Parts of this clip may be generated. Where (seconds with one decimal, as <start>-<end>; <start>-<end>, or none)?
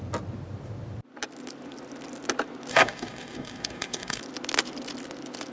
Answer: 2.7-4.2